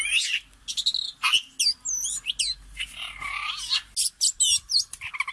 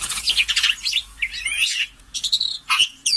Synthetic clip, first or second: second